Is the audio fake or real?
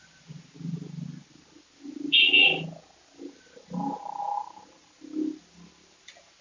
real